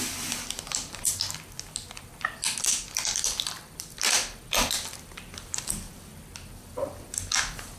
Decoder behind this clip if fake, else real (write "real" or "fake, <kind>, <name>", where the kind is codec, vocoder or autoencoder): real